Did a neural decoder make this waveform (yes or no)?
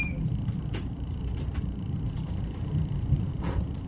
yes